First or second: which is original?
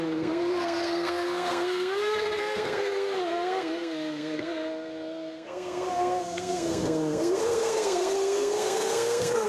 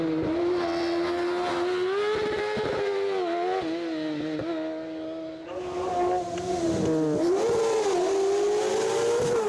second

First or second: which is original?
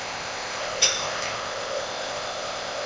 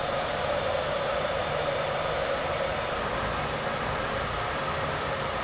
second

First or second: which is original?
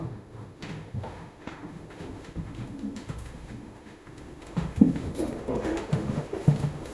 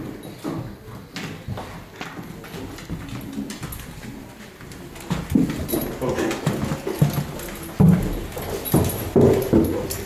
second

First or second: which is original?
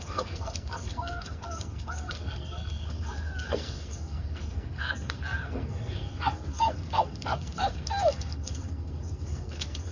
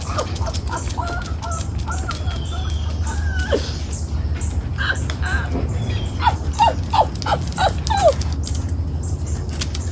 second